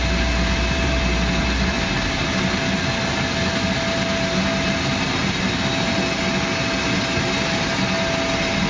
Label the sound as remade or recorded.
recorded